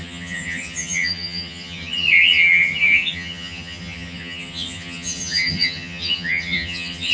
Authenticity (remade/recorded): remade